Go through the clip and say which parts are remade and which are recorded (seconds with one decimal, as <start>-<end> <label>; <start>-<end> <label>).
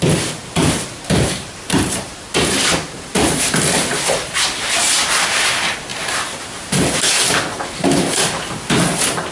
0.0-0.6 recorded; 0.6-3.6 remade; 3.6-9.3 recorded